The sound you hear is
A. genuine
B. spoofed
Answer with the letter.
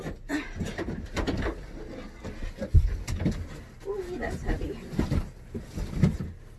A